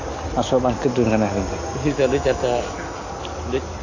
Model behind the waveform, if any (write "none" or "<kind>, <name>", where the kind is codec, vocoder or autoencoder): none